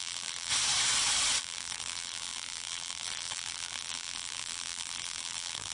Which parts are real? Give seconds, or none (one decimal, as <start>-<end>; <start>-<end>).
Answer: 0.5-1.4